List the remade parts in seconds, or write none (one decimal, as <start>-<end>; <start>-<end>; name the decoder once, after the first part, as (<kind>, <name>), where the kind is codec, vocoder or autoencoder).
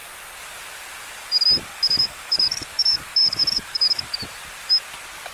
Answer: 1.7-4.2 (codec, DAC)